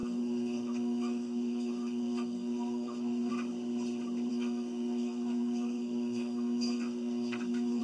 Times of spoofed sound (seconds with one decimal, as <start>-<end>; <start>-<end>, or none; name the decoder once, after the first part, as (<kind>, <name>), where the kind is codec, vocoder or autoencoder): 0.0-3.3 (codec, SNAC); 4.3-7.8